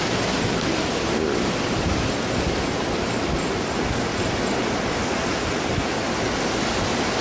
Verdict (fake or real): real